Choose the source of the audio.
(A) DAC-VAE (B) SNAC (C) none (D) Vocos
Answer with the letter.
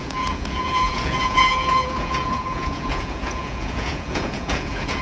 D